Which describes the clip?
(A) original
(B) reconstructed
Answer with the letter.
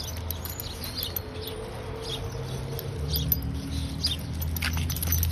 A